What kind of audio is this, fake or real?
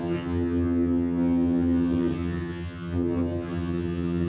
fake